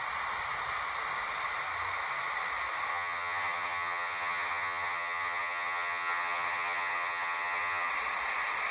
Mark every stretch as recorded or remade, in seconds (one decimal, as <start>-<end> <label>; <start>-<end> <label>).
0.0-2.9 recorded; 2.9-7.9 remade; 7.9-8.7 recorded

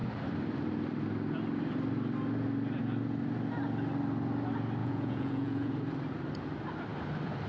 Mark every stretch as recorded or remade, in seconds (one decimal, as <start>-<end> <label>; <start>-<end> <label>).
0.0-4.8 recorded; 4.8-5.7 remade; 5.7-7.5 recorded

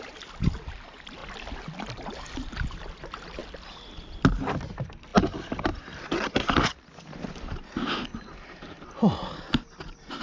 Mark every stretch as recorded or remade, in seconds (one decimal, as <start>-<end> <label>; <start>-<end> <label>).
0.0-10.2 recorded

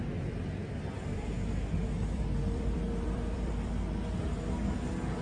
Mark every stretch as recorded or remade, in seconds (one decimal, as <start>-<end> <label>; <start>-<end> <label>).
0.0-0.6 recorded; 0.6-3.7 remade; 3.7-5.2 recorded

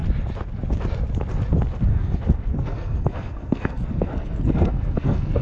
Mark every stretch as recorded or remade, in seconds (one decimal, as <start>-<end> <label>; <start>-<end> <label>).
0.0-1.9 recorded; 1.9-5.4 remade

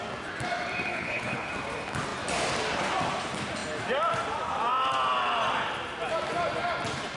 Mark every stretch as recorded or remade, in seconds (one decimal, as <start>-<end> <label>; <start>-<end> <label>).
0.0-0.9 recorded; 0.9-1.5 remade; 1.5-7.2 recorded

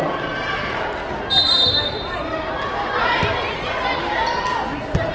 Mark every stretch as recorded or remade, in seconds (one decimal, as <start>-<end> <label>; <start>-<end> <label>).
0.0-5.1 recorded

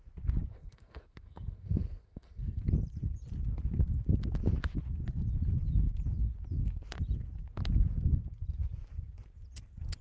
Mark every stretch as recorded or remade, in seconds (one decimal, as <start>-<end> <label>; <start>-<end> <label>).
0.0-0.5 recorded; 0.5-2.6 remade; 2.6-10.0 recorded